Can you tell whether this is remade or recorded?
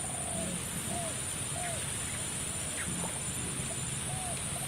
recorded